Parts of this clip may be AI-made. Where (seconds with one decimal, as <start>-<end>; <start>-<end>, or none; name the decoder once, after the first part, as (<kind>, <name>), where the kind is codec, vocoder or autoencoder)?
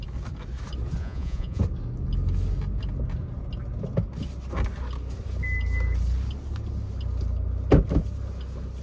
1.0-1.6 (vocoder, Vocos)